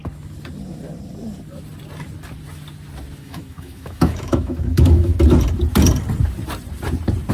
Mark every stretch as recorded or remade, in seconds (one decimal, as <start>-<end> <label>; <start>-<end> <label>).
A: 0.0-3.2 recorded; 3.2-5.1 remade; 5.1-7.3 recorded